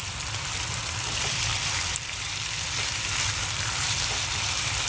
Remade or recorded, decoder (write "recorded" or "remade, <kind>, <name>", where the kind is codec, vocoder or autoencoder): remade, vocoder, BigVGAN v2